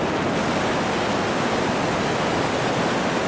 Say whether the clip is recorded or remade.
recorded